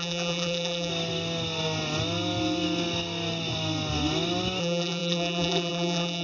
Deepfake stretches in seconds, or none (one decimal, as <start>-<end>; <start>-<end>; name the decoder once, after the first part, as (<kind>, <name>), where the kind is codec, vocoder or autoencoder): 0.0-0.9 (vocoder, BigVGAN v2); 4.6-6.2

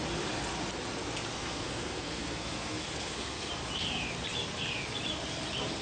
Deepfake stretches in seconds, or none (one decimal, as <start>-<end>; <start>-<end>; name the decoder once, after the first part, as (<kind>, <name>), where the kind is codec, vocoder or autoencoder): 1.3-3.5 (codec, SNAC)